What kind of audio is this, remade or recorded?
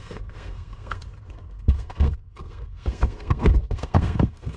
remade